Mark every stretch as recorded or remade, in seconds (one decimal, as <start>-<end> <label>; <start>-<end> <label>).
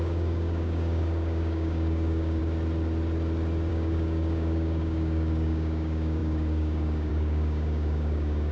0.0-2.4 remade; 2.4-3.7 recorded; 3.7-8.5 remade